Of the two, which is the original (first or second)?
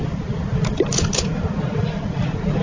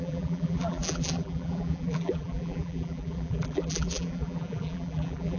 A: first